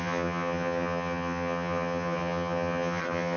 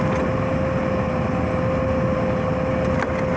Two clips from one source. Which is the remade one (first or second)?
first